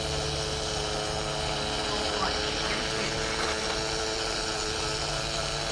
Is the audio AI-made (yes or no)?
no